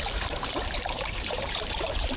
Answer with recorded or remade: remade